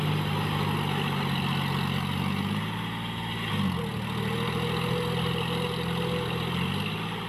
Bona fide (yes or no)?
yes